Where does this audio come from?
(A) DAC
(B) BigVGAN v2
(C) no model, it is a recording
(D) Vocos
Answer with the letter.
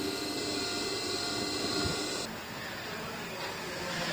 C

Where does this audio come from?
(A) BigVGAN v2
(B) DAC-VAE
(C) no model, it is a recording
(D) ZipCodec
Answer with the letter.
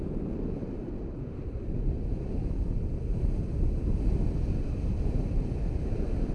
C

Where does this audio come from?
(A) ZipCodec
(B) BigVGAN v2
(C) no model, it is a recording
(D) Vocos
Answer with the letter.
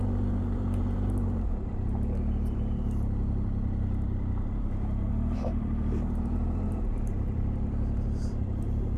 B